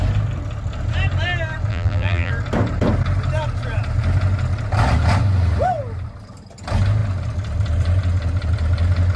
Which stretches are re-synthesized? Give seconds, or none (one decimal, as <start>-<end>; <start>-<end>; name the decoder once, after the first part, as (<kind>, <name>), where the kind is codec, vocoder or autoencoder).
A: 1.7-2.3 (vocoder, BigVGAN v2)